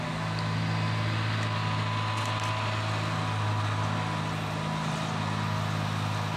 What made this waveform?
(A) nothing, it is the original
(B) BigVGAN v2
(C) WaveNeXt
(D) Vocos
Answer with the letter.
A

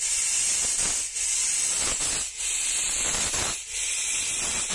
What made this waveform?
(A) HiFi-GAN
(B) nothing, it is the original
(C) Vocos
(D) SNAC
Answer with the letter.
B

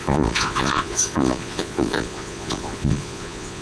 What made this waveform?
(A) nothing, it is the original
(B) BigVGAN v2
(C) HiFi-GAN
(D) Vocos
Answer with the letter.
D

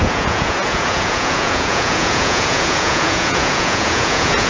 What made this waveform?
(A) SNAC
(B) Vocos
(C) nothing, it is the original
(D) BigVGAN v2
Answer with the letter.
B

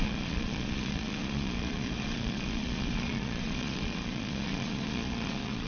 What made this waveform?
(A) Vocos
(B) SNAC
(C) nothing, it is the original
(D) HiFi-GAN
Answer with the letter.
A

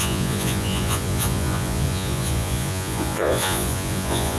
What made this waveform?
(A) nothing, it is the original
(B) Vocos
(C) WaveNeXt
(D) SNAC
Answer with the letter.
B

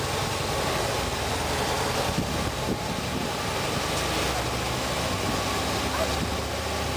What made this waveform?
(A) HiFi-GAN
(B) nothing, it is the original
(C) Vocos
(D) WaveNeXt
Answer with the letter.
B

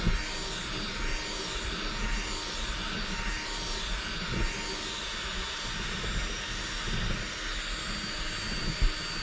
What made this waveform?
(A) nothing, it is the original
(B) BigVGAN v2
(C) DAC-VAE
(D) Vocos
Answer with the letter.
A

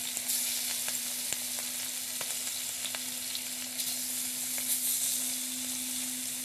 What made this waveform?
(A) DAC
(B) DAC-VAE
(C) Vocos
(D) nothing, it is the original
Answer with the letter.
D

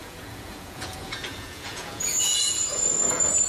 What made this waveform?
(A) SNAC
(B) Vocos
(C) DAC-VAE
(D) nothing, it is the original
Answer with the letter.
B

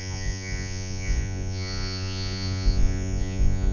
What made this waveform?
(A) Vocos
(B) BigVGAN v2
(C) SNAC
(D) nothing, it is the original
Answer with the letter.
A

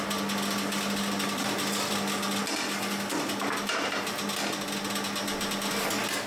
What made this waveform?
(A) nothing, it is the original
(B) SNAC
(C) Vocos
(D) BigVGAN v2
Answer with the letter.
A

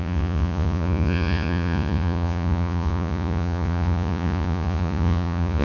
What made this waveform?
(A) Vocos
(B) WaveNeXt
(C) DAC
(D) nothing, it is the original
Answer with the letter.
A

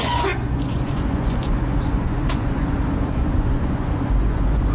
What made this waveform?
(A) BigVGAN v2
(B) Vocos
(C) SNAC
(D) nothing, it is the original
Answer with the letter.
B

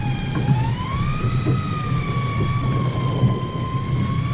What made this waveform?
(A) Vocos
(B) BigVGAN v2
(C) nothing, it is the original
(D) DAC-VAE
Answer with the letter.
C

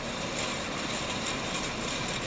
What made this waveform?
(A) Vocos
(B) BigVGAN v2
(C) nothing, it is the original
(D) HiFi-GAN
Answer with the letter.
C